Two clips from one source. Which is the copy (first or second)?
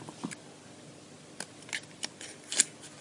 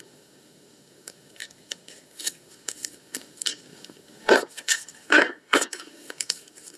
second